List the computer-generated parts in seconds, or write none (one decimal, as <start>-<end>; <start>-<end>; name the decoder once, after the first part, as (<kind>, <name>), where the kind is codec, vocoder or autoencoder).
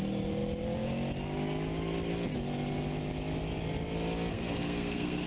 4.3-5.3 (codec, SNAC)